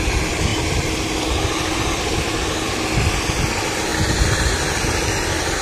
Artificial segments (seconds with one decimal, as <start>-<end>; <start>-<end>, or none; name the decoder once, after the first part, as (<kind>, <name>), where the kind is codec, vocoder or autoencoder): 0.5-1.9 (vocoder, BigVGAN v2)